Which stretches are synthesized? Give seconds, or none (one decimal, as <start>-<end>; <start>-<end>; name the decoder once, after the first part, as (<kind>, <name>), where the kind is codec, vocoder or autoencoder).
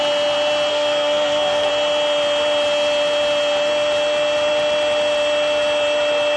0.7-1.7 (codec, SNAC)